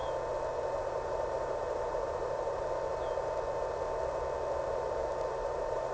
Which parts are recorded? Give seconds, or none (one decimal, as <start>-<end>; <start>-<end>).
0.0-0.8; 2.9-4.7